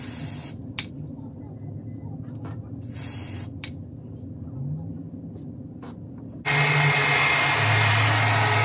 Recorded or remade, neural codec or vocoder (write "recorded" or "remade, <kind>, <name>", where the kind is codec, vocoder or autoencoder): recorded